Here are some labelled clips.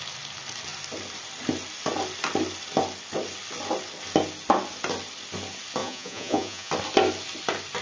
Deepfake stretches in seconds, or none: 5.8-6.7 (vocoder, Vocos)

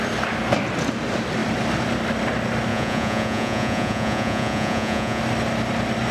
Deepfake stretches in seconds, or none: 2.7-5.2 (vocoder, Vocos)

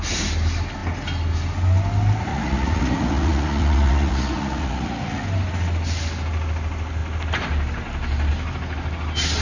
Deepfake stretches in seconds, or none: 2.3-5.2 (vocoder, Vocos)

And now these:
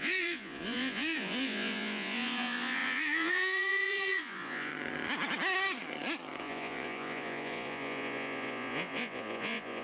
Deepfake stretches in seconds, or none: 0.0-4.7 (vocoder, Vocos); 6.4-9.8

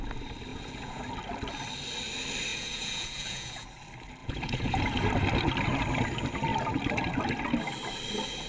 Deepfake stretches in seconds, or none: 0.5-1.0 (vocoder, Vocos); 2.5-3.7; 4.2-4.8